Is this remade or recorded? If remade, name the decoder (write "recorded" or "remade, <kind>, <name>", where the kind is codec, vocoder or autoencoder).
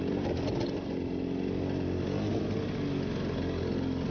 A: recorded